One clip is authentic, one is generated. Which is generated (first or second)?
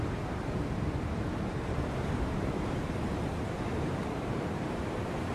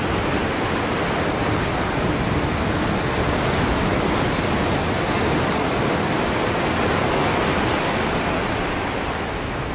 first